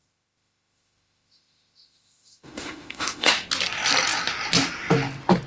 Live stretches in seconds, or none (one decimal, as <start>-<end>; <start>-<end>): 3.3-5.5